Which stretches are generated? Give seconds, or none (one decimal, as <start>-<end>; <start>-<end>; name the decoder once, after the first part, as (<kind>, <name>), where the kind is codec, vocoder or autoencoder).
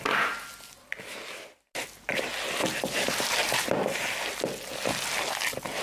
2.6-3.7 (vocoder, BigVGAN v2)